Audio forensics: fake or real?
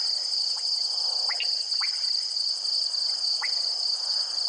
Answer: real